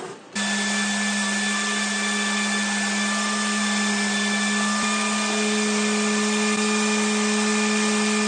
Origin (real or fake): real